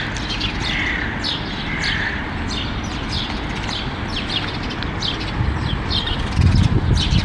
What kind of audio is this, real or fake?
real